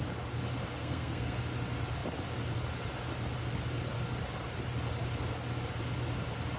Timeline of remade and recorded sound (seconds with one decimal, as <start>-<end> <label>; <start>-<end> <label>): 0.0-0.8 recorded; 0.8-1.4 remade; 1.4-6.6 recorded